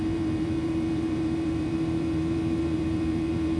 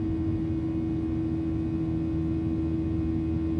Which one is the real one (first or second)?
second